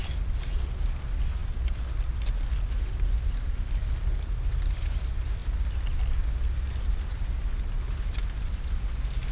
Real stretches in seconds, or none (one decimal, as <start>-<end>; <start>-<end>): 0.0-9.3